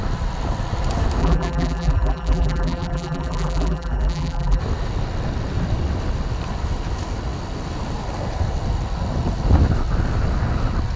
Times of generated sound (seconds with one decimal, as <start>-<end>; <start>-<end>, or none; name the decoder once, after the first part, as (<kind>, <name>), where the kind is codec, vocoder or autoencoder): 1.2-4.6 (vocoder, BigVGAN v2)